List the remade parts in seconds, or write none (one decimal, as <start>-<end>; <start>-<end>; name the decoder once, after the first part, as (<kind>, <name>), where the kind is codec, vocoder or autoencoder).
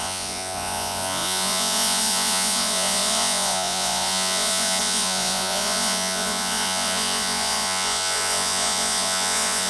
0.0-9.7 (vocoder, Vocos)